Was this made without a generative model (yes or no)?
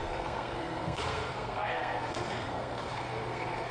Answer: no